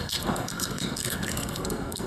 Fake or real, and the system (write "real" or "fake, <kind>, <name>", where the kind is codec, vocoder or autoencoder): fake, codec, SNAC